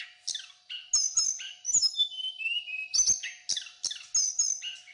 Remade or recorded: recorded